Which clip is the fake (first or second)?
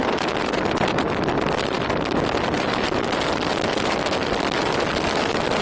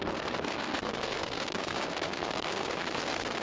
second